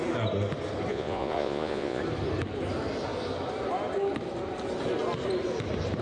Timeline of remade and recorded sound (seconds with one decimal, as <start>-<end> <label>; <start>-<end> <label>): 0.0-0.9 recorded; 0.9-2.0 remade; 2.0-6.0 recorded